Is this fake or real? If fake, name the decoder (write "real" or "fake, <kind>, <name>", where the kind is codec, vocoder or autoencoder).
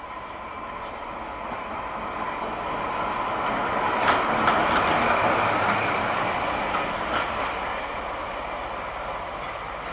real